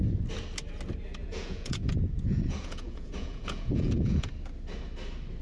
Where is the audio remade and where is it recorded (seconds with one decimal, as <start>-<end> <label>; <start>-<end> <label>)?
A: 0.0-1.2 recorded; 1.2-4.3 remade; 4.3-5.4 recorded